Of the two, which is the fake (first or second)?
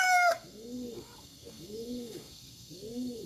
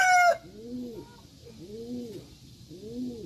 first